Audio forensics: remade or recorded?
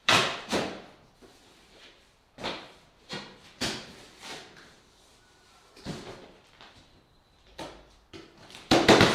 remade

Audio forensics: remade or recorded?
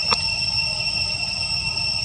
recorded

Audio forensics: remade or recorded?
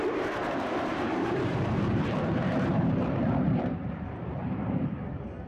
remade